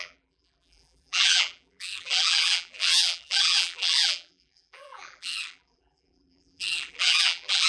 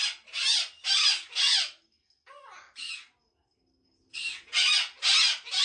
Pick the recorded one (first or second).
second